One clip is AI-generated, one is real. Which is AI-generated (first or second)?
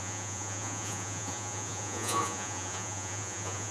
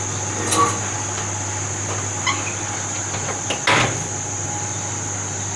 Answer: first